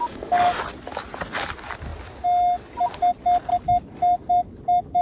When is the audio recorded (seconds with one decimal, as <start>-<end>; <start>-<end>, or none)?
0.6-5.0